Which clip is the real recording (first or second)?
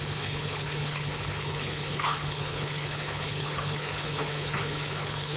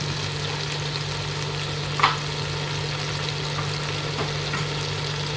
second